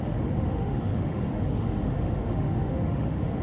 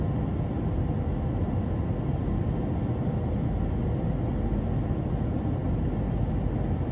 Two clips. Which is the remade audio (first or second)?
first